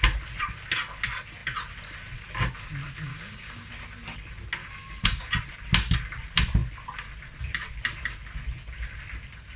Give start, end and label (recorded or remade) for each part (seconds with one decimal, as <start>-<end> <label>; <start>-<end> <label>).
0.0-3.1 recorded; 3.1-3.7 remade; 3.7-4.6 recorded; 4.6-5.3 remade; 5.3-9.6 recorded